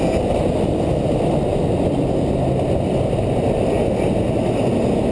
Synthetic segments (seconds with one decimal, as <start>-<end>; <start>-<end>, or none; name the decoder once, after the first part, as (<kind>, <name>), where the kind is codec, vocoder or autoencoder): none